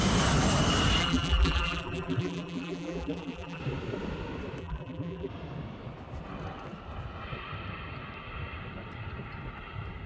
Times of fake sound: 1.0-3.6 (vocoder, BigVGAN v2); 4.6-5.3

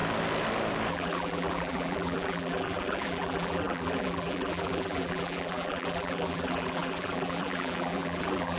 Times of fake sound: 0.9-8.6 (vocoder, BigVGAN v2)

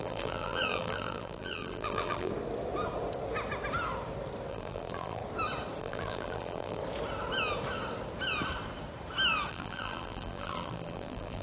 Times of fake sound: 0.0-2.3 (vocoder, BigVGAN v2); 4.5-5.2; 5.8-6.8; 9.5-11.4

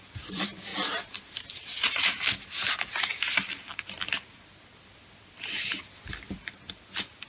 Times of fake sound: 0.0-0.7 (vocoder, BigVGAN v2); 5.1-7.3

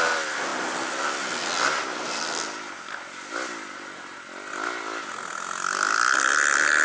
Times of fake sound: none

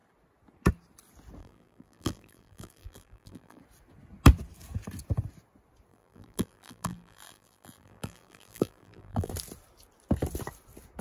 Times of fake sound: 1.4-3.6 (vocoder, BigVGAN v2); 5.9-9.3